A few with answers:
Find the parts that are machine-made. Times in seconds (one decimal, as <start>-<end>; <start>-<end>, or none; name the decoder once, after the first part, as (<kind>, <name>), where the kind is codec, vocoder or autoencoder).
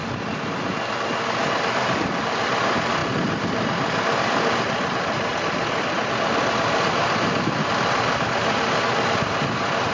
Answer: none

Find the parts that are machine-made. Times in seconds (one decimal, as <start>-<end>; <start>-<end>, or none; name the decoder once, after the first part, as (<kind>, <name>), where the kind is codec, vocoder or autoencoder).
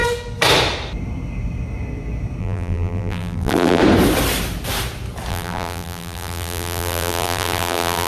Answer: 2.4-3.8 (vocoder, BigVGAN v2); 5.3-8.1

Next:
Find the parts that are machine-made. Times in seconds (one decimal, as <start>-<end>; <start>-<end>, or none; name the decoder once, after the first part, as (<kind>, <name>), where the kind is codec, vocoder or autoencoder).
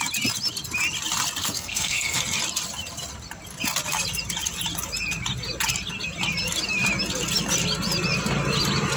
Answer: 1.4-2.2 (codec, SNAC)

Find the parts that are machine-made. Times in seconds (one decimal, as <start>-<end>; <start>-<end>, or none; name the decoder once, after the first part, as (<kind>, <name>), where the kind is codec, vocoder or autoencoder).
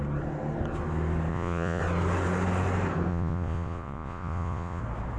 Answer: 1.3-1.8 (vocoder, Vocos); 3.1-4.8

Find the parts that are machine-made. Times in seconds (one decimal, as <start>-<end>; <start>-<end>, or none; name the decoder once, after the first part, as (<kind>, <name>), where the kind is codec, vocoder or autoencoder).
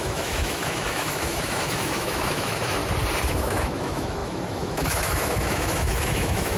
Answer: 0.0-2.8 (autoencoder, DAC-VAE); 3.3-6.6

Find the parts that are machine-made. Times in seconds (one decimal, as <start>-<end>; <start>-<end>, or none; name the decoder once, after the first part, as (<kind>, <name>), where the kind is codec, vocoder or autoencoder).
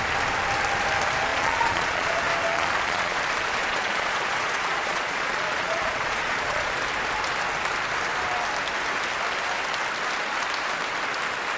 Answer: 1.3-2.1 (vocoder, Vocos); 2.5-3.2; 3.6-6.8